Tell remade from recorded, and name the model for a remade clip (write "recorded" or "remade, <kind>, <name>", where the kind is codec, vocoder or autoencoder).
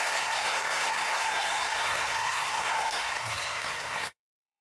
remade, codec, SNAC